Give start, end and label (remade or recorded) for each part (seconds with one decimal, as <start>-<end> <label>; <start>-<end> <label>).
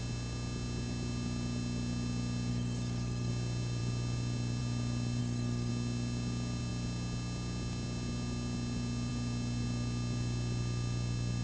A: 0.0-2.5 recorded; 2.5-3.3 remade; 3.3-5.2 recorded; 5.2-5.7 remade; 5.7-11.4 recorded